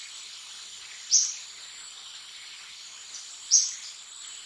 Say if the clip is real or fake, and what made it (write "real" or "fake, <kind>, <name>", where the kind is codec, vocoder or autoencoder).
real